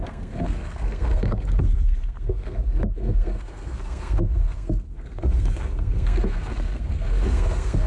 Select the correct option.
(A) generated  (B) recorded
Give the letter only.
A